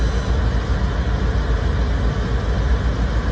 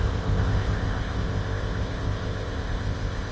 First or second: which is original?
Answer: first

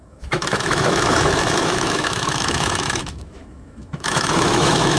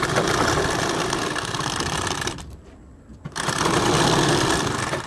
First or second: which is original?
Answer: second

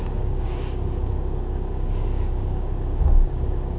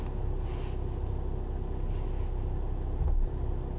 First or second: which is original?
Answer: second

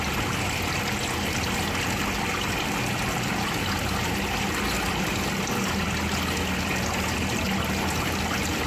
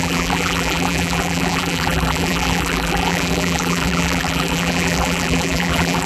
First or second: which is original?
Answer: first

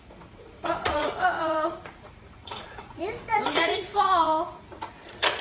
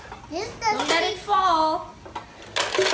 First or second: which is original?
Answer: second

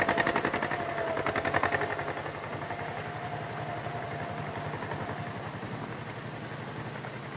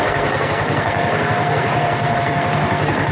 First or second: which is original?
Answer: first